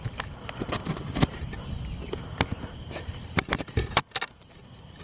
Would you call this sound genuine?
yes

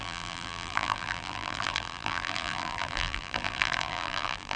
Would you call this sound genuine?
no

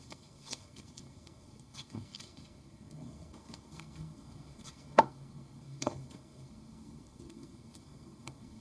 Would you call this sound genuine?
no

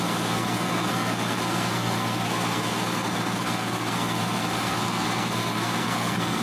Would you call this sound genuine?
no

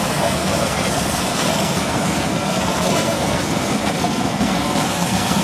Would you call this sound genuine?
no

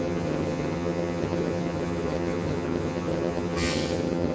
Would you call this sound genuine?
no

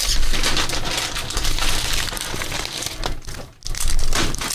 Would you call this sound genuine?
yes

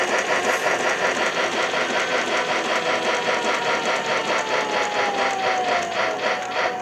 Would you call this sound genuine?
yes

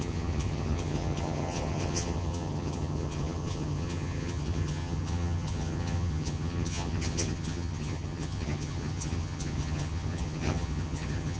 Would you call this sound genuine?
no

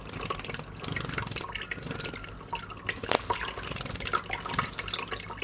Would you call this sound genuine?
yes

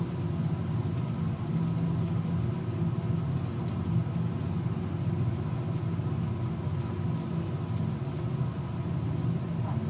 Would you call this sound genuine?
yes